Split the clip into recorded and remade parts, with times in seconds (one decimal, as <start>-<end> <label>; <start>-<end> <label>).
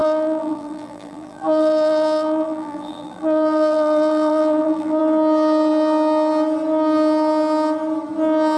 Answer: 0.0-5.0 remade; 5.0-8.6 recorded